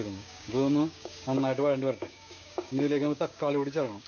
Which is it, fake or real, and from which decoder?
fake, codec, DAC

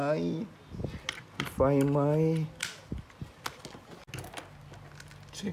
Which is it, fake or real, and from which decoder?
real